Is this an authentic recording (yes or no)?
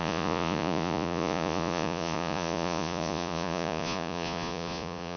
no